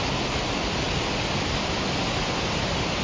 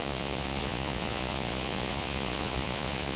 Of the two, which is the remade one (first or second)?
second